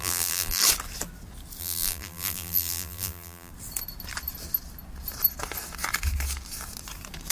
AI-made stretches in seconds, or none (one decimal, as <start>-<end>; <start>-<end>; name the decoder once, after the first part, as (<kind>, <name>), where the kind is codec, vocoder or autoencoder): 0.0-0.6 (vocoder, BigVGAN v2); 1.6-3.5